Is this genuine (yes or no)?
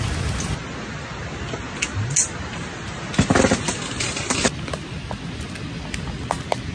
yes